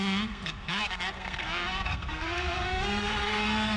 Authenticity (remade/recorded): remade